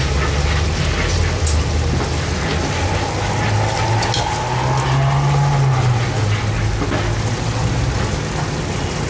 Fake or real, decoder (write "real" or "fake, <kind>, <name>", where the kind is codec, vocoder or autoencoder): real